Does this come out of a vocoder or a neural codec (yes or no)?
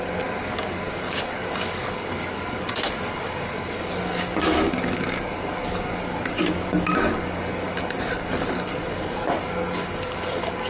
yes